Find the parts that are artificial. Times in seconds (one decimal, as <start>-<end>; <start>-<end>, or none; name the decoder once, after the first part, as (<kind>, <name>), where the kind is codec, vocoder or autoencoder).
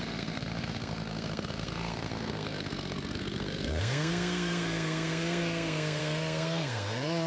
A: 0.0-7.3 (codec, SNAC)